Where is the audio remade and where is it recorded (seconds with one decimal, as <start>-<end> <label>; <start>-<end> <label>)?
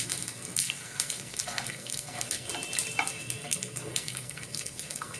0.0-2.5 remade; 2.5-3.1 recorded; 3.1-5.2 remade